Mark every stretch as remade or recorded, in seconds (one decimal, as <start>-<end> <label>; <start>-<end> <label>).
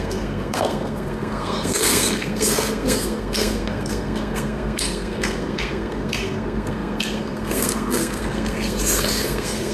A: 0.0-9.7 remade